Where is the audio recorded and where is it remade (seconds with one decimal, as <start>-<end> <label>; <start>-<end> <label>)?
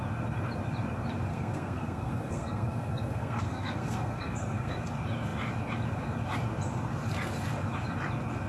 0.0-1.3 recorded; 1.3-4.7 remade; 4.7-8.5 recorded